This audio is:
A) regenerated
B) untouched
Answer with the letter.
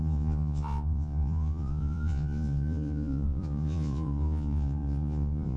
A